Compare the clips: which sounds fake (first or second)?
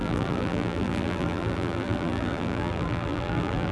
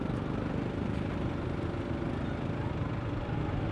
first